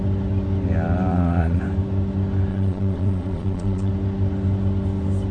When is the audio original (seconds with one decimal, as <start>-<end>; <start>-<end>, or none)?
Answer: 0.0-1.1; 1.6-2.5; 3.9-5.3